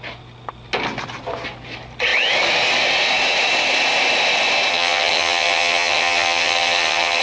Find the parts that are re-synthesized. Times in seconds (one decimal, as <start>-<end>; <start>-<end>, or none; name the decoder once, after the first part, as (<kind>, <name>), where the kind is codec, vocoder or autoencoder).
4.7-7.2 (vocoder, HiFi-GAN)

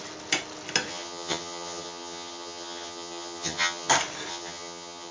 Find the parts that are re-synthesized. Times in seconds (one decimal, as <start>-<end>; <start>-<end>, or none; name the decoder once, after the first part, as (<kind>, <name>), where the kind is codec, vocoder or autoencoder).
0.9-3.9 (vocoder, HiFi-GAN); 4.3-5.1

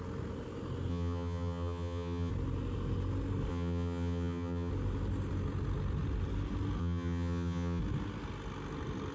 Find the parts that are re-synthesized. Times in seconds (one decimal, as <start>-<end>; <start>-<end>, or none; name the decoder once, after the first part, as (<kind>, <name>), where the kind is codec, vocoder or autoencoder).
0.9-2.3 (vocoder, HiFi-GAN); 3.5-4.7; 6.8-7.8

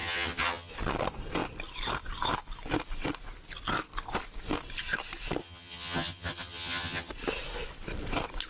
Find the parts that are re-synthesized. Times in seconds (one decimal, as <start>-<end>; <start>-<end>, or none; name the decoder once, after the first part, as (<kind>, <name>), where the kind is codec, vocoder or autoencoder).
0.0-0.7 (vocoder, HiFi-GAN); 5.4-7.1